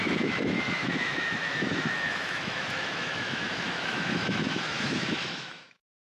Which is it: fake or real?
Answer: fake